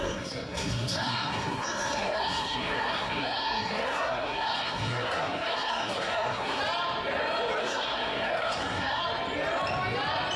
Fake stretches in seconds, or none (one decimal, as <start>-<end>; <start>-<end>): 0.0-6.6; 7.6-9.0